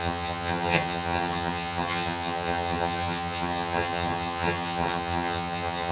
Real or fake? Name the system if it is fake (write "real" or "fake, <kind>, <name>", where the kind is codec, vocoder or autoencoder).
fake, vocoder, HiFi-GAN